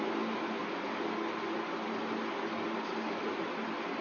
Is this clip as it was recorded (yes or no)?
yes